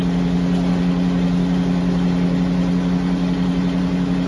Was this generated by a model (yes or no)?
no